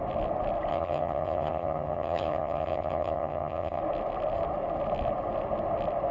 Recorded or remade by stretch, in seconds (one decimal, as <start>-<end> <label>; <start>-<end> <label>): 0.0-0.7 recorded; 0.7-3.8 remade; 3.8-6.1 recorded